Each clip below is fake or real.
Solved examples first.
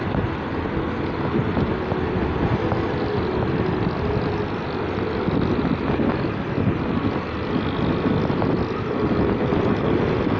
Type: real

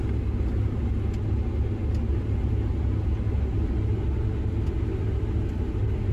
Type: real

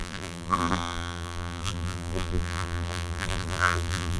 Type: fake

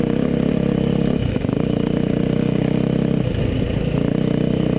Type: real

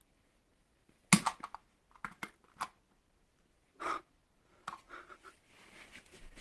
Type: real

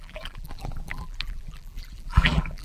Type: fake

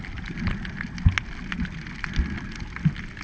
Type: real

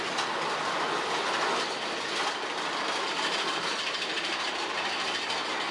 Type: real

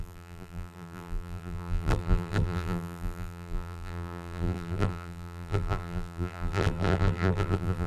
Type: fake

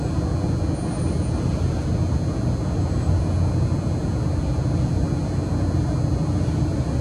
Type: real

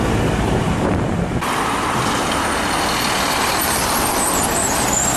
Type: real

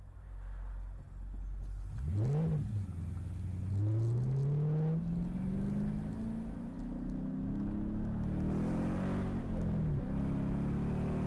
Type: real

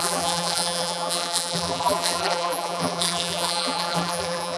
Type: fake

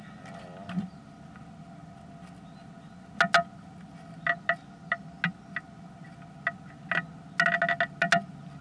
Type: real